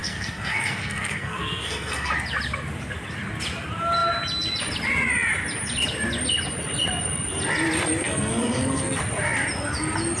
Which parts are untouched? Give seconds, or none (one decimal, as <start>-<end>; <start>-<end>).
2.1-8.0; 9.0-10.2